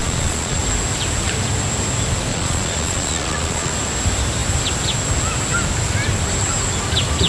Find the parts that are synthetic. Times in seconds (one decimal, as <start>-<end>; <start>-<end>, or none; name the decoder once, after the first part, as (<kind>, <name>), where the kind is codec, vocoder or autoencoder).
0.0-0.6 (vocoder, Vocos); 2.3-3.7